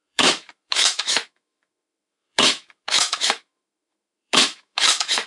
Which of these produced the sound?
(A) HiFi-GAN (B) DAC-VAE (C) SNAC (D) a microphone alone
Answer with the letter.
B